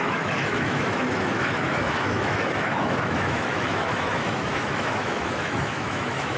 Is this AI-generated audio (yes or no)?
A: yes